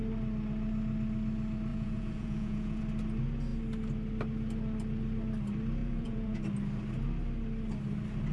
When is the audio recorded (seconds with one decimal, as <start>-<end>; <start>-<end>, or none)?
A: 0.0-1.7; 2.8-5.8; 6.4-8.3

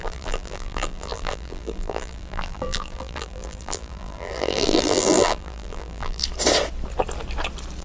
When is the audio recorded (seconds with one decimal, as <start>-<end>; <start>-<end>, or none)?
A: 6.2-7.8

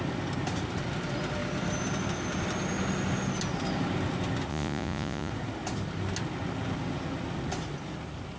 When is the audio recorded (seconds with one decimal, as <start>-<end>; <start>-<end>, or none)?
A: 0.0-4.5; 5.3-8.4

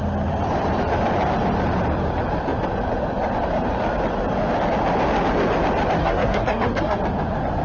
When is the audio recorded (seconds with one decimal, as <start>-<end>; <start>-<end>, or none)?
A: 0.0-6.0; 7.0-7.6

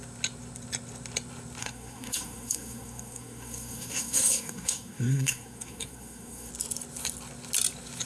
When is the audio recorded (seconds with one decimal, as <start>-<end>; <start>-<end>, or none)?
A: 0.0-1.6; 6.5-8.1

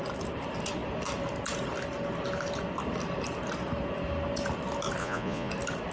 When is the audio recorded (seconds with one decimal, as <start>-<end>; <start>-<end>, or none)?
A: 0.0-5.0; 5.5-5.9

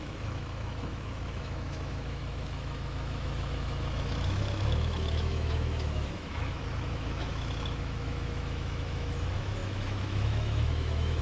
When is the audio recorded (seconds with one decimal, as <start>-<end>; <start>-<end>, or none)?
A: none

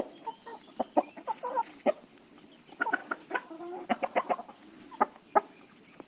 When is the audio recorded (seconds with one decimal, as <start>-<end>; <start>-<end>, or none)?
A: 0.0-0.5; 1.5-3.0; 3.8-6.1